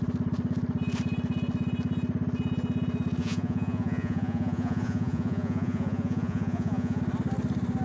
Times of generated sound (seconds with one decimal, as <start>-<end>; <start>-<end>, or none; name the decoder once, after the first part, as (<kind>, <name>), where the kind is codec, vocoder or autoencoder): 3.2-7.0 (vocoder, Vocos)